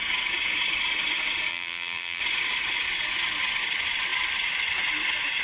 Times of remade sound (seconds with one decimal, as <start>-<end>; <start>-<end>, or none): 1.5-2.2